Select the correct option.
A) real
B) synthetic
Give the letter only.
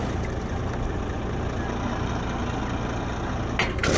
A